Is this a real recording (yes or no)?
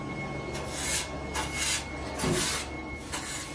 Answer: yes